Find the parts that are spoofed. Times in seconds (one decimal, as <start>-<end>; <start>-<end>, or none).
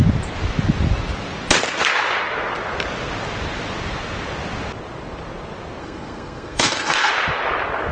5.8-7.1